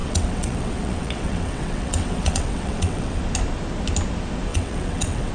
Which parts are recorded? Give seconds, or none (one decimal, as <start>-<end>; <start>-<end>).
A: 3.2-4.5